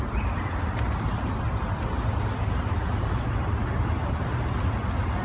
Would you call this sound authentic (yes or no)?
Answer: yes